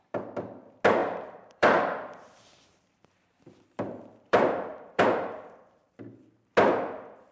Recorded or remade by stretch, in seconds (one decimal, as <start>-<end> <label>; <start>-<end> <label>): 0.0-1.0 recorded; 1.0-5.0 remade; 5.0-7.3 recorded